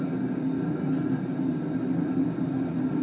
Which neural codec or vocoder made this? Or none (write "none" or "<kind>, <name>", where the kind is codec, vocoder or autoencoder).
none